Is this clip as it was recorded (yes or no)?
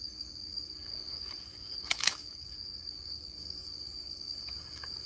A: no